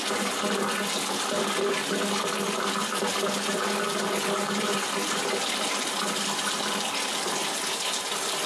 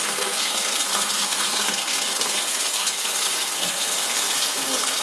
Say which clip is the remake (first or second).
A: second